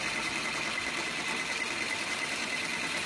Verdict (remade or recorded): recorded